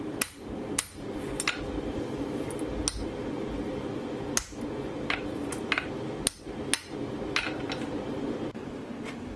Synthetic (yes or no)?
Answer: no